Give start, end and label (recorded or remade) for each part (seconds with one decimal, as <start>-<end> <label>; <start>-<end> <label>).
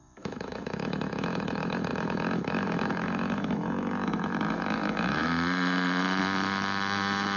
0.0-7.4 remade